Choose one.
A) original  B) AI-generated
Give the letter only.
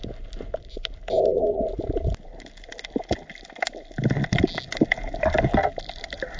A